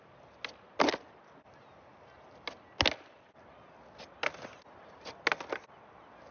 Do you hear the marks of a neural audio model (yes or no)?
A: no